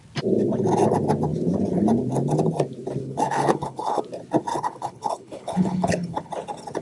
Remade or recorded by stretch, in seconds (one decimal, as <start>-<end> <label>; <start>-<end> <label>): 0.0-3.0 recorded; 3.0-4.0 remade; 4.0-4.5 recorded; 4.5-6.3 remade; 6.3-6.8 recorded